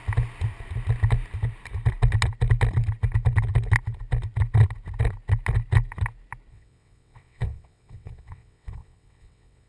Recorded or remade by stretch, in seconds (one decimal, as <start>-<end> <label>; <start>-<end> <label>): 0.0-6.5 recorded; 6.5-9.7 remade